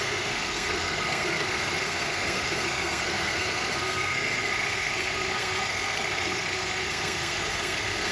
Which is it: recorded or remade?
remade